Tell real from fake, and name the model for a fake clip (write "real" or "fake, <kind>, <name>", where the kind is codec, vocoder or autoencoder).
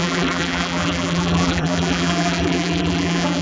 fake, vocoder, BigVGAN v2